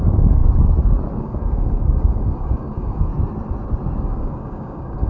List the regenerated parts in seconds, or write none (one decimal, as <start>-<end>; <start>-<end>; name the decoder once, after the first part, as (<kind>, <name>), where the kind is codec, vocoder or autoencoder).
0.0-0.4 (codec, DAC); 1.2-3.1; 4.0-5.1